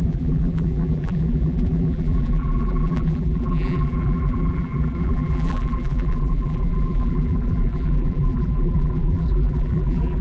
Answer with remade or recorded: remade